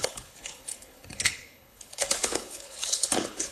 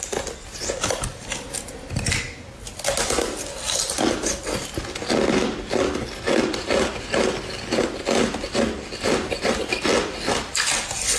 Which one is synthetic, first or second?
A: first